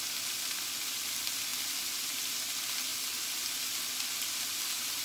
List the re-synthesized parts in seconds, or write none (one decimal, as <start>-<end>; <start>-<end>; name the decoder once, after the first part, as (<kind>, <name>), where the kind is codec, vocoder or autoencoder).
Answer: none